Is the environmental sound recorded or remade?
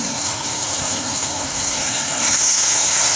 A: remade